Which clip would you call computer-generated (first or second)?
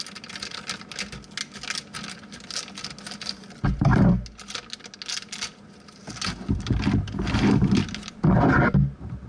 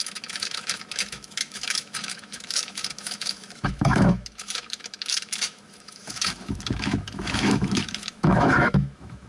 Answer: second